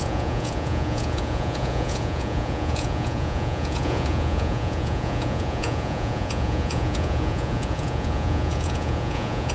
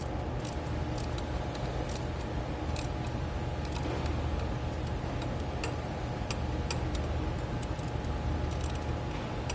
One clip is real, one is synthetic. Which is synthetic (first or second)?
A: first